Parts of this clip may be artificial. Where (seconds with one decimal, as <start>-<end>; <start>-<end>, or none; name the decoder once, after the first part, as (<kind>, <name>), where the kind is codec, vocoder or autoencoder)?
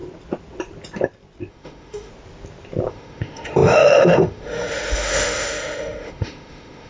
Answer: 1.5-2.1 (autoencoder, DAC-VAE); 2.9-6.9